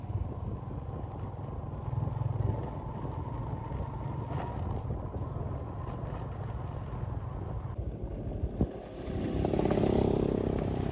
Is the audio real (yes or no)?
yes